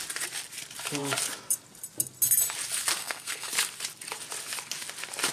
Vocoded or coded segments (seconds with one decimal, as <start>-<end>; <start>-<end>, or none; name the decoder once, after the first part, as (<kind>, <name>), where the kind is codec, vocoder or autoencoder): 3.0-3.5 (codec, SNAC)